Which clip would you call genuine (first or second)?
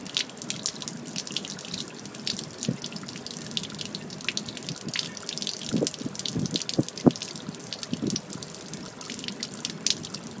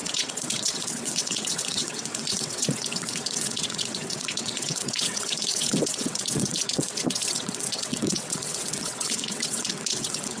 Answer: first